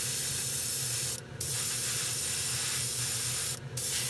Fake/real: real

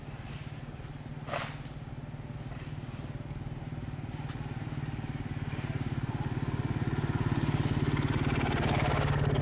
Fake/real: real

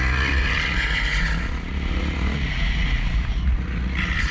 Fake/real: fake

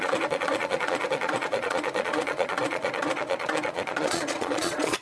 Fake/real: fake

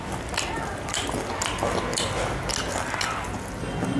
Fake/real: real